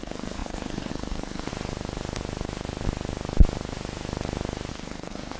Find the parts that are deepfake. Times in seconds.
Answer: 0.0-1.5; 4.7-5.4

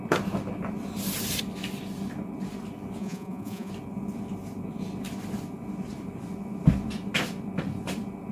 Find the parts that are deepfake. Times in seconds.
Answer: 3.0-3.7

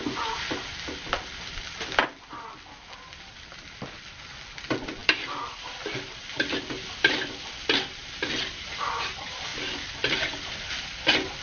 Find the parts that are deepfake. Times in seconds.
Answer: 0.0-9.5; 10.0-11.4

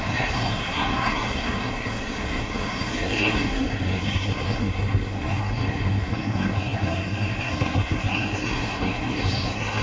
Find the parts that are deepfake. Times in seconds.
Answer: 0.0-9.8

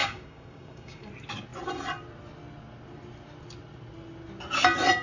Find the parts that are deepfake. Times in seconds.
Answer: 0.0-1.1